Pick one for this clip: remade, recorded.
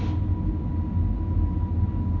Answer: recorded